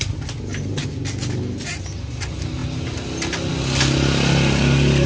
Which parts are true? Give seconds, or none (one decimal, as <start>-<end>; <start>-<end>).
0.0-5.1